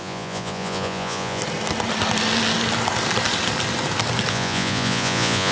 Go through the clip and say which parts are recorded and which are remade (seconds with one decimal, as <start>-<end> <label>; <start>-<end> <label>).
0.0-1.4 remade; 1.4-4.3 recorded; 4.3-5.5 remade